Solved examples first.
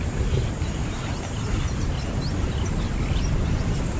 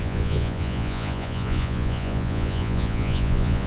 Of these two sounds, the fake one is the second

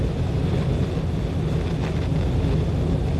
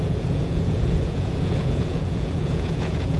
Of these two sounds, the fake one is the second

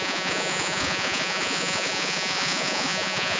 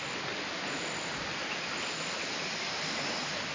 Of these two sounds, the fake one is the first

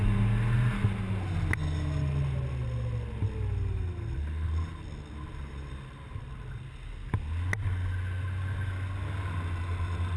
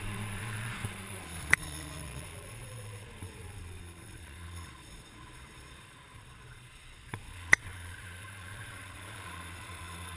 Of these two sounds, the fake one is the second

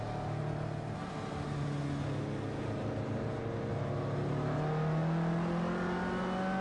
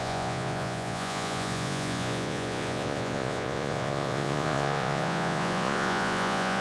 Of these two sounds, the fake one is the second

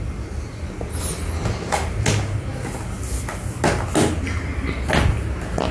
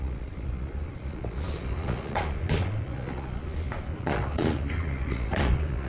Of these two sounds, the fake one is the second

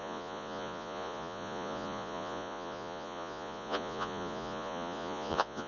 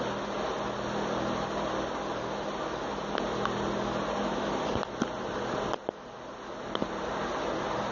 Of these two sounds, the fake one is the first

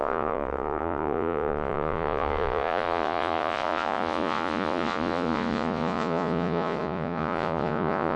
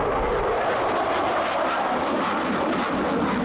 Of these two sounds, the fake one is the first